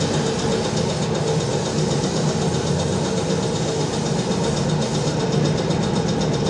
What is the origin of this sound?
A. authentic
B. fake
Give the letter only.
A